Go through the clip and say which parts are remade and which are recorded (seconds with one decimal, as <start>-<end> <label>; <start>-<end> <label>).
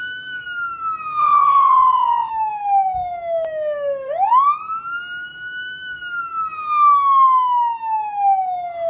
0.0-1.2 recorded; 1.2-2.3 remade; 2.3-8.9 recorded